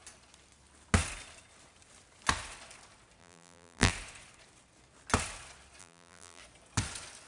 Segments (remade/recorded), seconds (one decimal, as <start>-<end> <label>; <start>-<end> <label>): 0.0-3.2 recorded; 3.2-3.9 remade; 3.9-5.8 recorded; 5.8-6.4 remade; 6.4-7.3 recorded